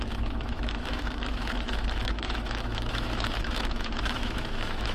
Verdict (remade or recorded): remade